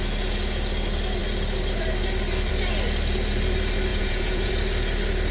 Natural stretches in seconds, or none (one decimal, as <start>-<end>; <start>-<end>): 0.0-3.9; 4.5-5.3